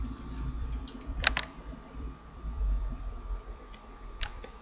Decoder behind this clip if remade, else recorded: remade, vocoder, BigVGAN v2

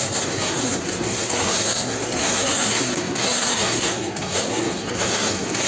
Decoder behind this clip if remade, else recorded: remade, codec, SNAC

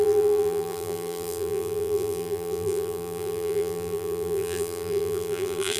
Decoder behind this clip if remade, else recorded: remade, vocoder, BigVGAN v2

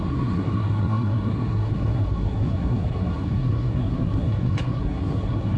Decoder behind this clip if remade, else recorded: remade, codec, SNAC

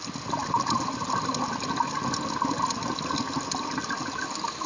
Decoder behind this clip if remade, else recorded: recorded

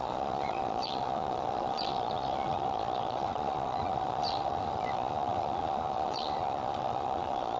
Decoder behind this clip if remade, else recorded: remade, vocoder, Vocos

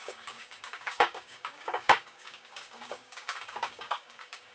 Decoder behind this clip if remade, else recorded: remade, codec, DAC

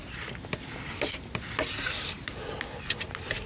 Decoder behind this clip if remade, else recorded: recorded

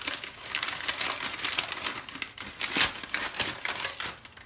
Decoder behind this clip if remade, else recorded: recorded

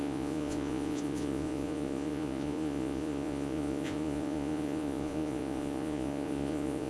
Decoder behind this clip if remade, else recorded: remade, vocoder, Vocos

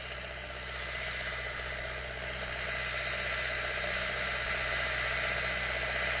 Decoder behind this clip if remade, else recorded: recorded